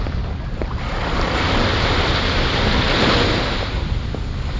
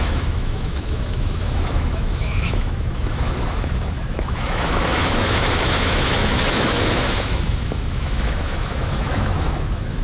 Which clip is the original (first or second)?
first